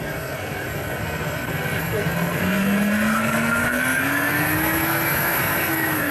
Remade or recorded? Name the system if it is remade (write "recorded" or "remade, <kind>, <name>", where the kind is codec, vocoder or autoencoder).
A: remade, codec, SNAC